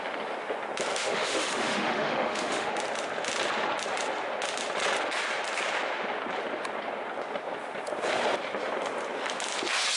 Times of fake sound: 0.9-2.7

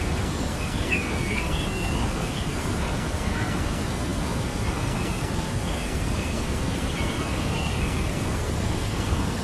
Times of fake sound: 0.0-9.4

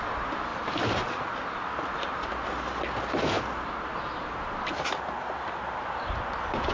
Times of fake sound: 3.9-4.7

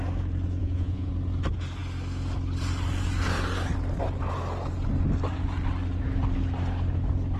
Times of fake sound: 0.6-1.1

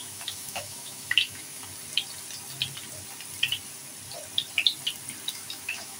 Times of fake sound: 0.0-1.7; 5.3-6.0

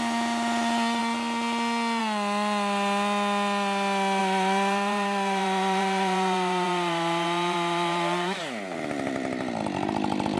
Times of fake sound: 4.2-8.4

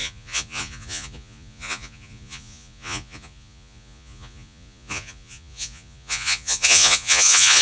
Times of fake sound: 0.0-7.6